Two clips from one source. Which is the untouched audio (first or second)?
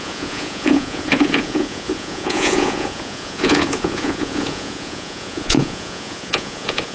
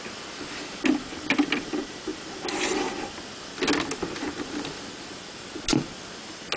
second